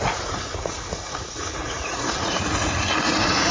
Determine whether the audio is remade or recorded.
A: remade